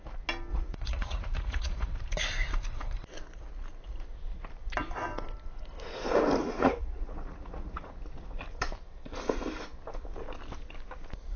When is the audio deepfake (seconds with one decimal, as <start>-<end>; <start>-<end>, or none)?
0.5-1.9; 6.4-8.0